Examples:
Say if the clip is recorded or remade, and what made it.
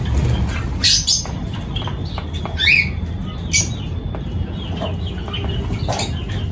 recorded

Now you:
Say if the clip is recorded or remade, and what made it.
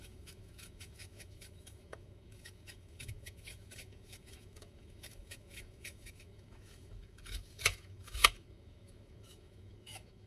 remade, autoencoder, DAC-VAE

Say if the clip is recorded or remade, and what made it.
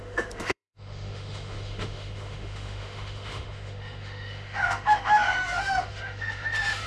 remade, autoencoder, DAC-VAE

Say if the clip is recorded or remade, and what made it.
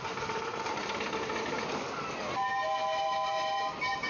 recorded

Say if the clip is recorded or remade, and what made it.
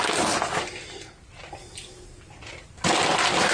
recorded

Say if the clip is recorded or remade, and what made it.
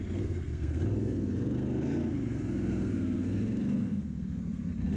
remade, codec, SNAC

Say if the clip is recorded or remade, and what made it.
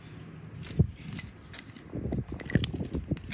recorded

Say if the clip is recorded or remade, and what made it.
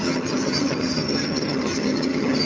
remade, vocoder, HiFi-GAN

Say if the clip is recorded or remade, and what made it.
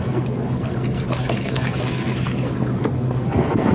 remade, codec, SNAC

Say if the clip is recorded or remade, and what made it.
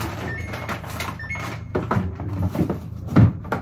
remade, vocoder, BigVGAN v2